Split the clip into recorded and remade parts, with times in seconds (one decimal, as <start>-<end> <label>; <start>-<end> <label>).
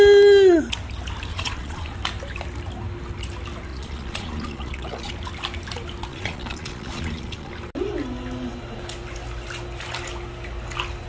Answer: 0.0-1.3 recorded; 1.3-1.9 remade; 1.9-3.7 recorded; 3.7-5.1 remade; 5.1-6.1 recorded; 6.1-7.5 remade; 7.5-11.1 recorded